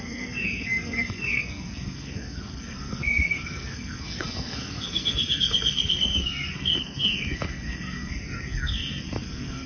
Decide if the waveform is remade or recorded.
remade